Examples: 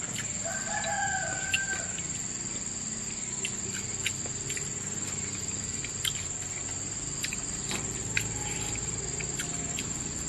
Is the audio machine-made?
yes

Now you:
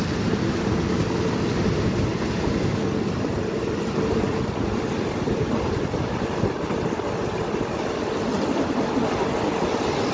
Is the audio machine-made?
no